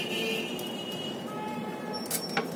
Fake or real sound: real